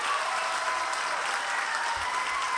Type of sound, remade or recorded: recorded